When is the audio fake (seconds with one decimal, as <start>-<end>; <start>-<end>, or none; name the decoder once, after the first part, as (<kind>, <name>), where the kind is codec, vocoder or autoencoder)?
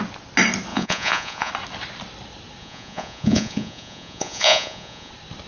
0.7-1.5 (vocoder, Vocos); 2.6-5.1